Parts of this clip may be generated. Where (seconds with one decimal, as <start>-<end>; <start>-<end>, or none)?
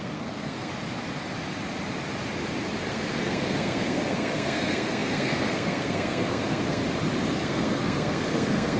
0.0-0.7; 2.9-6.8; 7.3-8.8